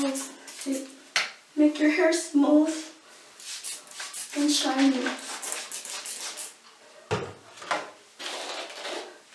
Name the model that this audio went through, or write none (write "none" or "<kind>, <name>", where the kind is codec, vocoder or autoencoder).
none